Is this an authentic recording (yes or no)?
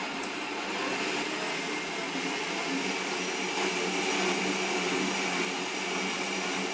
yes